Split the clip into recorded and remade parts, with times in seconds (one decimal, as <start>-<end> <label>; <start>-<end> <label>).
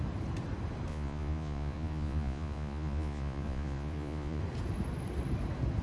0.0-0.9 recorded; 0.9-4.4 remade; 4.4-5.8 recorded